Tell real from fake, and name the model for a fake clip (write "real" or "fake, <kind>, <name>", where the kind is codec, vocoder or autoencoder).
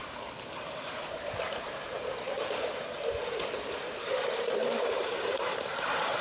fake, vocoder, BigVGAN v2